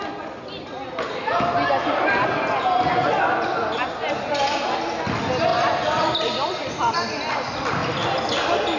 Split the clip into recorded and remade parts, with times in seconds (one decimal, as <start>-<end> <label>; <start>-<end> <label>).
0.0-8.8 recorded